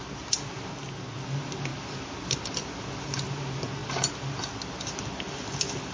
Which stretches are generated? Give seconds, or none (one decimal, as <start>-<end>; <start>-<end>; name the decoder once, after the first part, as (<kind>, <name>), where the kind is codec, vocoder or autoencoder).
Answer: none